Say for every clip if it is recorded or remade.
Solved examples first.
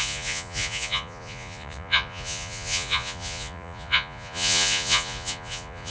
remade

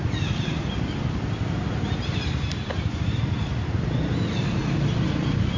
recorded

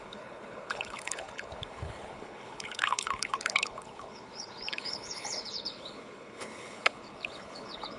remade